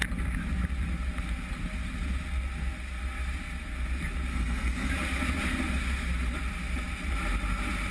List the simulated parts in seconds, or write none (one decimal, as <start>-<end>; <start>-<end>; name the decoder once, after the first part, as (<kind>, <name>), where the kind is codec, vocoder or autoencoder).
4.3-4.9 (codec, SNAC)